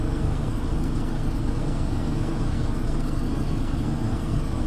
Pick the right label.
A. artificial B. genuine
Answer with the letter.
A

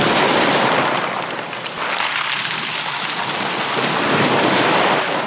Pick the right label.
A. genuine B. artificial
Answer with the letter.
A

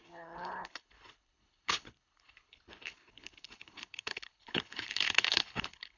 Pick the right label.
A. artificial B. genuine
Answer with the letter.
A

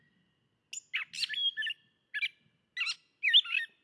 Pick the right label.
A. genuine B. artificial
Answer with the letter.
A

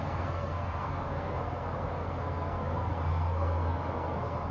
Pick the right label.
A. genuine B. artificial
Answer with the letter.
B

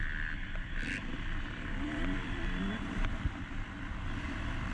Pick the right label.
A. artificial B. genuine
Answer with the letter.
A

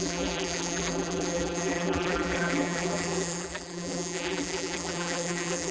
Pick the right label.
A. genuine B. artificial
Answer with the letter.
B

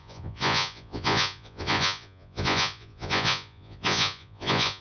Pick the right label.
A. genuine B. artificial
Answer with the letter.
B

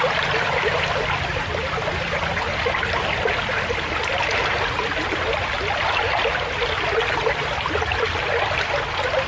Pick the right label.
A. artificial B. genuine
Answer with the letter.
B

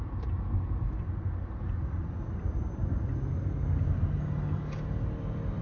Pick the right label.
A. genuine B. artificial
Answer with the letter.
A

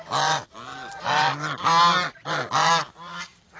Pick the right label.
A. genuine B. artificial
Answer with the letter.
A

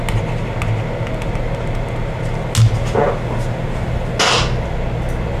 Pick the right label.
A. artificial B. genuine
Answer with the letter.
B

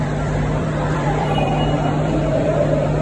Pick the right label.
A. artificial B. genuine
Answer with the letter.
A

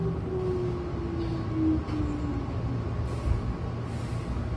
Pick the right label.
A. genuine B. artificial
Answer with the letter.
A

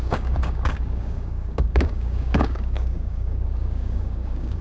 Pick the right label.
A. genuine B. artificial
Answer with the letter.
B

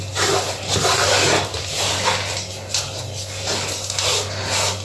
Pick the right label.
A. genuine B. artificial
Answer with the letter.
A